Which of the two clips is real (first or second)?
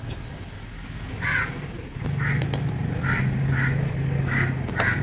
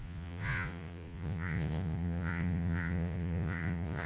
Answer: first